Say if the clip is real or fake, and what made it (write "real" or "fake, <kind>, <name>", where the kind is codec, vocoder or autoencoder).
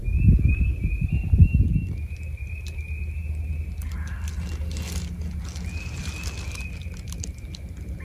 real